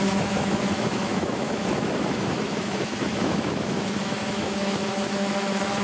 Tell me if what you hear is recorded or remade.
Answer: remade